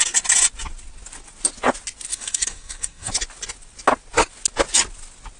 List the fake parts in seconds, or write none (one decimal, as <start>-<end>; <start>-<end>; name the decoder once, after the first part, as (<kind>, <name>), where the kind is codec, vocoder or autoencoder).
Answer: 2.1-3.1 (codec, DAC)